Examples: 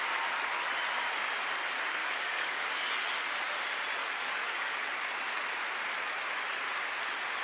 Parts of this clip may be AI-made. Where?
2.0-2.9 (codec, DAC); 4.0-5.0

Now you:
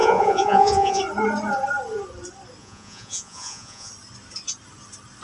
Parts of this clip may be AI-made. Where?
0.0-1.0 (vocoder, Vocos); 2.6-3.9

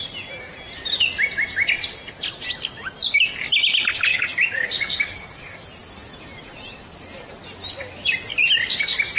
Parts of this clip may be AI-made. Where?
4.1-5.6 (codec, DAC)

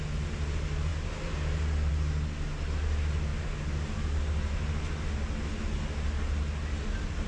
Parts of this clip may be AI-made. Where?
none

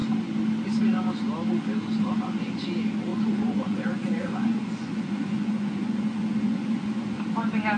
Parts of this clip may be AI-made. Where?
3.1-7.2 (vocoder, Vocos)